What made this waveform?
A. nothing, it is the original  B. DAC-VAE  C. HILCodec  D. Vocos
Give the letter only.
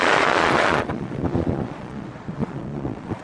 D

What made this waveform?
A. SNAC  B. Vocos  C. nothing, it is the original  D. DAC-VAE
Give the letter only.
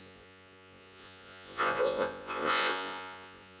B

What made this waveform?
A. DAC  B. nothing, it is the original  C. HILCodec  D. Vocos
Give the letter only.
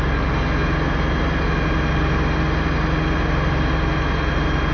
B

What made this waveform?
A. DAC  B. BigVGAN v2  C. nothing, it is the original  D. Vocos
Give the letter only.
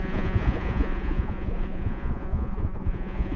D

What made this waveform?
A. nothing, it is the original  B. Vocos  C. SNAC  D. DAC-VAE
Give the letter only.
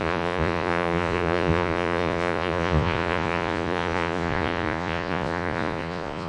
B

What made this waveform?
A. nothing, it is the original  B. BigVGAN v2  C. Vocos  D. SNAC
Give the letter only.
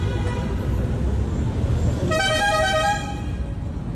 A